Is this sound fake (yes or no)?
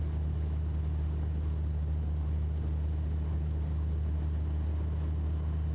no